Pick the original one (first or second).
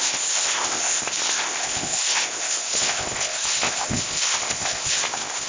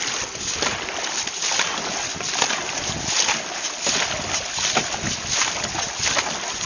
second